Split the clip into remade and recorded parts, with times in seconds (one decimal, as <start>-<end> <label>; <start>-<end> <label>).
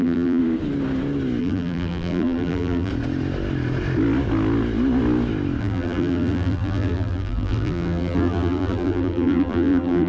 0.0-0.4 remade; 0.4-1.4 recorded; 1.4-2.9 remade; 2.9-5.6 recorded; 5.6-10.1 remade